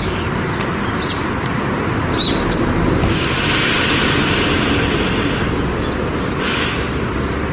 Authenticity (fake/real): fake